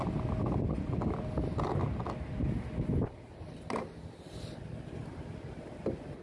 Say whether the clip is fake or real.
real